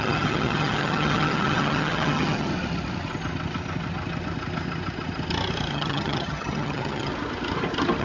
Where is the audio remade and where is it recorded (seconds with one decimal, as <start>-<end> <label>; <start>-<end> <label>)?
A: 0.0-2.5 remade; 2.5-5.7 recorded; 5.7-7.1 remade; 7.1-8.0 recorded